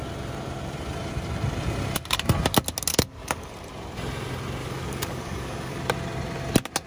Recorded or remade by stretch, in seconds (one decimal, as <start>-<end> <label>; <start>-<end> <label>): 0.0-2.9 recorded; 2.9-3.5 remade; 3.5-4.6 recorded; 4.6-5.8 remade; 5.8-6.9 recorded